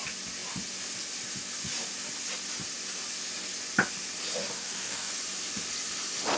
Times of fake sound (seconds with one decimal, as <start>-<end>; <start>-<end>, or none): 4.4-5.1